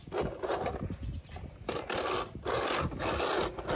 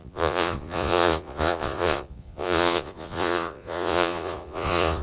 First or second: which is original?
first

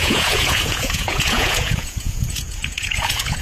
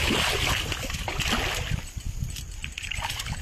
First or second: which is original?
second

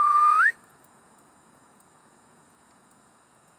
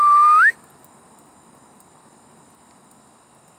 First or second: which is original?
second